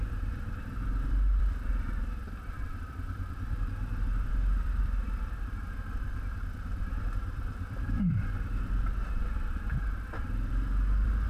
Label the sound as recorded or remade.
remade